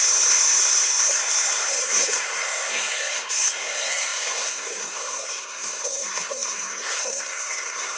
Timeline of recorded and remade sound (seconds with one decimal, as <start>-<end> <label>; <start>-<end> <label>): 0.0-8.0 remade